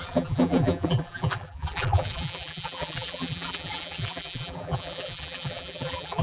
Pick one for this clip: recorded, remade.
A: remade